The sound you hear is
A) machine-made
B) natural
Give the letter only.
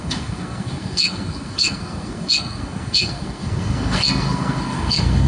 A